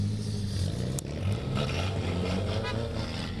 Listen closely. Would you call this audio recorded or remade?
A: recorded